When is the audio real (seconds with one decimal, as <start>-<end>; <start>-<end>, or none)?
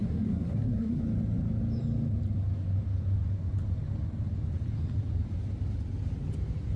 1.0-6.8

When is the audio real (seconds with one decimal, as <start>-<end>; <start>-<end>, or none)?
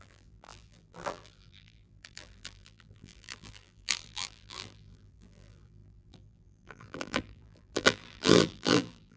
none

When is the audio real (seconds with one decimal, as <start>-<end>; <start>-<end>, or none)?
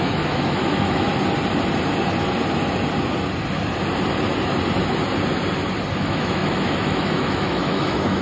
1.1-6.0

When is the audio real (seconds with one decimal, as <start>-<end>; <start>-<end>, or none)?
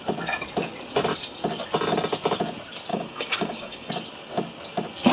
0.0-2.9; 3.9-5.1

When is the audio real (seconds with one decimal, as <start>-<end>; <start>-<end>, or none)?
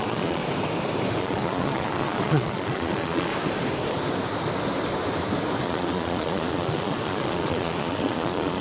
0.4-1.2; 3.3-5.6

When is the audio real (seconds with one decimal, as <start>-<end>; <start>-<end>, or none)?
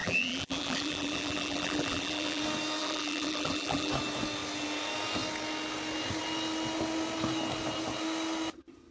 2.4-2.8; 3.9-8.9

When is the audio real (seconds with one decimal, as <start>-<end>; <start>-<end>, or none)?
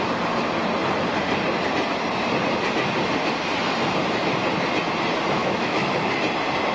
0.0-5.4; 6.1-6.7